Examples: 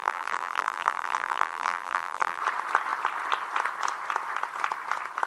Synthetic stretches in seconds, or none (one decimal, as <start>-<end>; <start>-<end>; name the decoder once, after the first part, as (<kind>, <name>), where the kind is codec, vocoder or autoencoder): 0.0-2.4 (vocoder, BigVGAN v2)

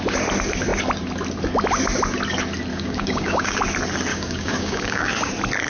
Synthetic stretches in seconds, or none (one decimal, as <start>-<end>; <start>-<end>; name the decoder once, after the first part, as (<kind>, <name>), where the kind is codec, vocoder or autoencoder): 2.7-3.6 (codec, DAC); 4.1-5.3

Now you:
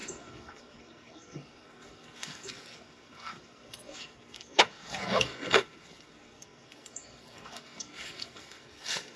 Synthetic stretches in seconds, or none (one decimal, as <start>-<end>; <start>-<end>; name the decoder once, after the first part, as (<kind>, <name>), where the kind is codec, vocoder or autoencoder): 0.0-9.2 (codec, SNAC)